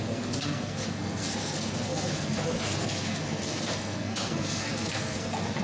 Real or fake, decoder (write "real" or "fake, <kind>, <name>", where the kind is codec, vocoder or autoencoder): fake, codec, SNAC